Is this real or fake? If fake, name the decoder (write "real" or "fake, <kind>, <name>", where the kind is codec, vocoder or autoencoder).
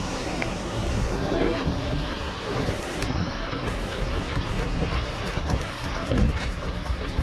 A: fake, codec, SNAC